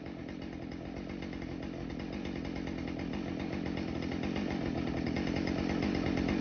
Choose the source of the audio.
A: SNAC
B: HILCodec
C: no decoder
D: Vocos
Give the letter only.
C